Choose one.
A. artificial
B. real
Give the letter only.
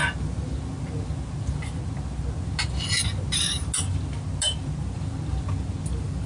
B